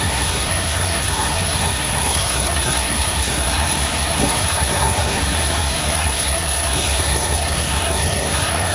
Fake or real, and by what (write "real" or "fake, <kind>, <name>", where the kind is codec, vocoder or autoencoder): fake, codec, SNAC